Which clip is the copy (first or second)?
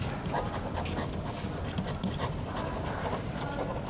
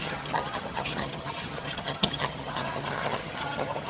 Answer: second